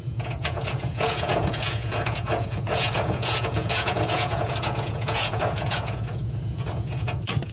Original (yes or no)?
no